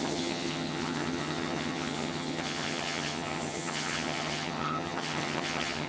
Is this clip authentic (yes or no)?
no